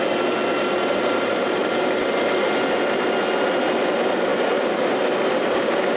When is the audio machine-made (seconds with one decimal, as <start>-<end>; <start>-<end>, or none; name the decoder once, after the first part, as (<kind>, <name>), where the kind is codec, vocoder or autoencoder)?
none